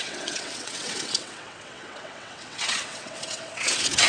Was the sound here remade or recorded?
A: remade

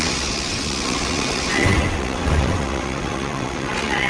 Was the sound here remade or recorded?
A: remade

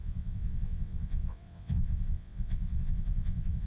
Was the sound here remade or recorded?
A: remade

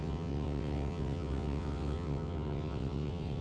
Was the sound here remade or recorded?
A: remade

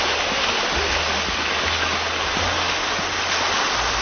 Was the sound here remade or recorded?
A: recorded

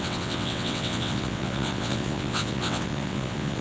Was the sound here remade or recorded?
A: remade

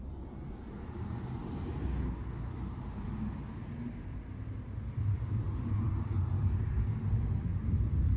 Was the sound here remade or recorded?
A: recorded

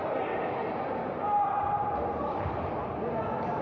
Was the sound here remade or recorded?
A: recorded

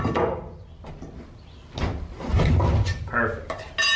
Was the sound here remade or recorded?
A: recorded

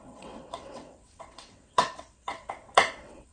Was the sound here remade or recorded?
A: remade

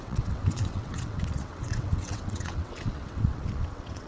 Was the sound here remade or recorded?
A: remade